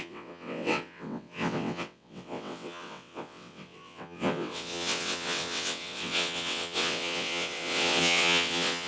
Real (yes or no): no